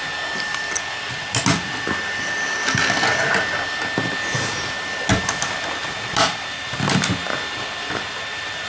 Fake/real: real